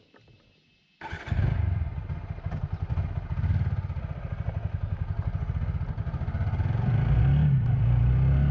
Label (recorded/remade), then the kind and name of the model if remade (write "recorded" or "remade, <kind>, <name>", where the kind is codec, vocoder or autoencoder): recorded